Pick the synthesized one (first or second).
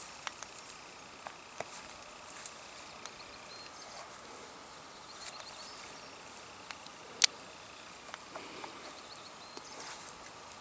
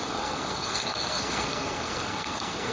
second